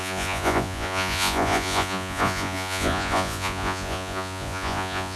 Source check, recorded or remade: remade